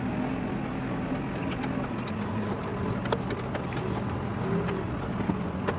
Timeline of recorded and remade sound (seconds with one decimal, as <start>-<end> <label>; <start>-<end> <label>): 0.0-5.8 recorded